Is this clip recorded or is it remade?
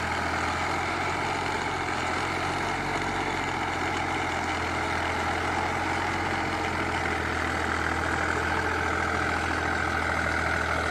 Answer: recorded